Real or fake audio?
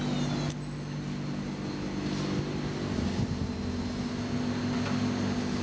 real